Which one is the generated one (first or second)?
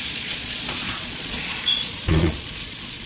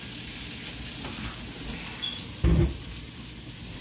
first